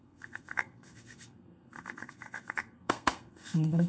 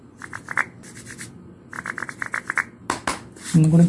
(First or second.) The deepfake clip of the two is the first